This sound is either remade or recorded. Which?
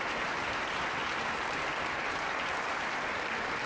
recorded